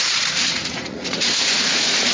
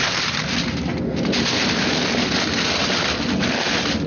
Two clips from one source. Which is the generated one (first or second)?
first